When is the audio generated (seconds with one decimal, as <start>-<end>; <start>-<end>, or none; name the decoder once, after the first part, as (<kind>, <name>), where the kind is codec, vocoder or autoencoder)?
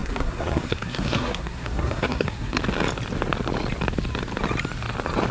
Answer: 0.0-2.6 (codec, SNAC)